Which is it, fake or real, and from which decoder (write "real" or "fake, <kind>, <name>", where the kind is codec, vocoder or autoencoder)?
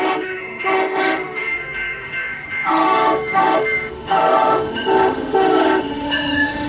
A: fake, autoencoder, DAC-VAE